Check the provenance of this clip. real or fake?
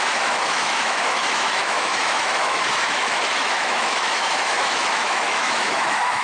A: fake